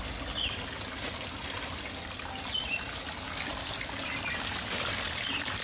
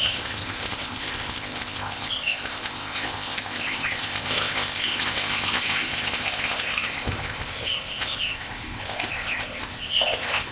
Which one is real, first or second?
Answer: first